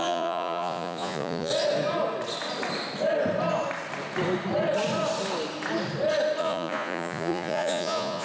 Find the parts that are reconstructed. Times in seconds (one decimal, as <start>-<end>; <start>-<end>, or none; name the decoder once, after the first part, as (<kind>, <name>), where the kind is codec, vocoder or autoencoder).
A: 0.0-1.5 (vocoder, Vocos); 6.4-8.2